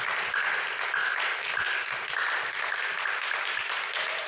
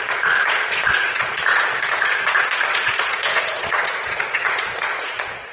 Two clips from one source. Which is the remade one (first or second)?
second